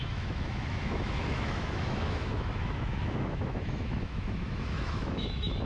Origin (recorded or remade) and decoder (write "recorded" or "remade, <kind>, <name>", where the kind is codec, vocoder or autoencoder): remade, autoencoder, DAC-VAE